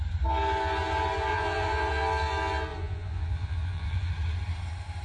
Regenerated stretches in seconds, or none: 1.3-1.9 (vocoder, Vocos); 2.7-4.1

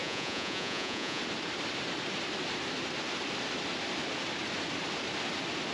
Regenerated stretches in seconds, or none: 0.0-1.2 (vocoder, Vocos)

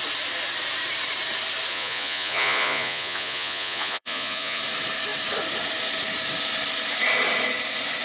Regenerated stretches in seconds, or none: 1.7-4.6 (vocoder, Vocos)

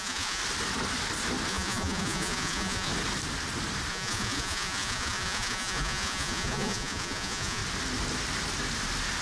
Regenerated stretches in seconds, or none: 0.0-0.4 (vocoder, Vocos); 1.5-2.9; 3.9-7.6

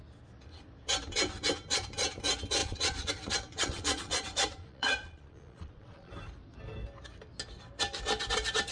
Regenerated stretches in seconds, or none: 2.6-3.1 (vocoder, Vocos); 3.5-6.1

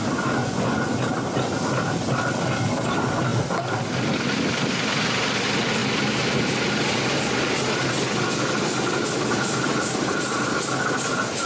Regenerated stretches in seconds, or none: 0.4-0.9 (vocoder, Vocos)

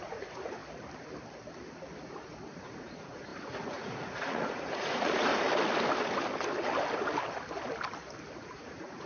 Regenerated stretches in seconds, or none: 0.0-0.6 (vocoder, Vocos); 2.0-5.3; 8.3-9.1

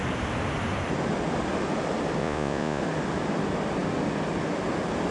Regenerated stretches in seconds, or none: 2.2-2.8 (vocoder, Vocos)